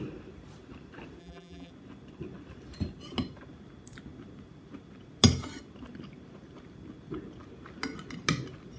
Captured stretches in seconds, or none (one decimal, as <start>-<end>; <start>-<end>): 0.0-1.2; 1.7-8.8